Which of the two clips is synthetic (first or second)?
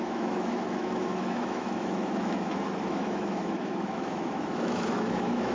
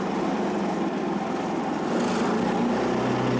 first